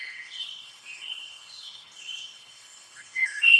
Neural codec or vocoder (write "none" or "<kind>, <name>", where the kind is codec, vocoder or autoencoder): codec, HILCodec